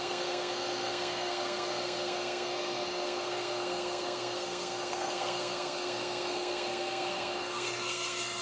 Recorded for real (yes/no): no